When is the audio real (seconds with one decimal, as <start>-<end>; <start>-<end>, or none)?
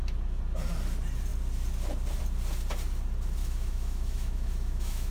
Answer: 0.0-3.4